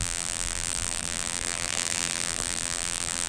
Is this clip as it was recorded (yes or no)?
no